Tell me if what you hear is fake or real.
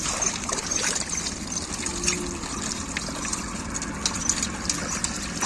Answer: real